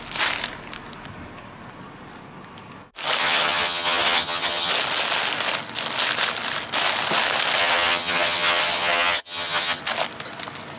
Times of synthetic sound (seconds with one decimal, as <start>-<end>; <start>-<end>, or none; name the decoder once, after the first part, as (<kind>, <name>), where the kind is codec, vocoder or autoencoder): 3.2-4.7 (vocoder, HiFi-GAN); 7.6-9.8